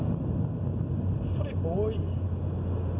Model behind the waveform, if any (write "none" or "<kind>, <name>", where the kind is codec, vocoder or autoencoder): none